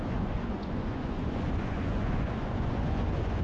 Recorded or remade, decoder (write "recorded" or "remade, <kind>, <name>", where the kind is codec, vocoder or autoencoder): remade, vocoder, Vocos